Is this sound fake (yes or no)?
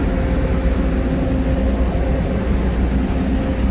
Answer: no